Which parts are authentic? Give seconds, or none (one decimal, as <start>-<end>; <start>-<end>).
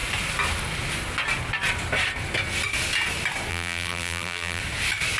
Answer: 0.0-3.5; 4.6-5.2